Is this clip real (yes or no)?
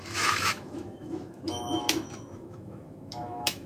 no